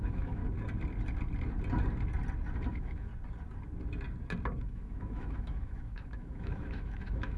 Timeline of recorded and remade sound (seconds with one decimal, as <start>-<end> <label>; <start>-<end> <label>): 0.0-0.4 remade; 0.4-2.7 recorded; 2.7-3.1 remade; 3.1-4.6 recorded; 4.6-7.4 remade